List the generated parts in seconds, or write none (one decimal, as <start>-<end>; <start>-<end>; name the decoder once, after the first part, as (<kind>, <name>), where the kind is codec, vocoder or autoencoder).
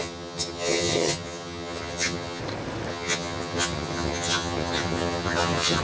0.0-2.4 (vocoder, HiFi-GAN); 2.9-5.8